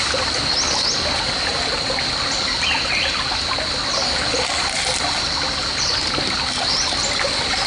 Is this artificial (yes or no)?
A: no